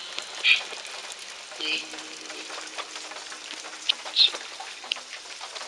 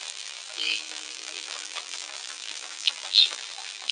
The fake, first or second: second